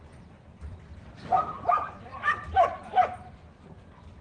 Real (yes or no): no